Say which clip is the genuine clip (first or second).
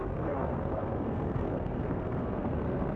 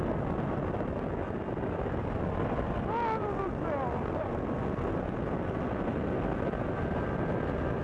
second